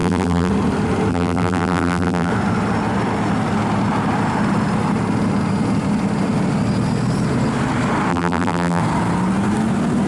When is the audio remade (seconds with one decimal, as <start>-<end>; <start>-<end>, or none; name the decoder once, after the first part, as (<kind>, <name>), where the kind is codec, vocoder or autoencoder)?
0.0-0.5 (vocoder, BigVGAN v2); 1.1-2.3; 8.1-8.8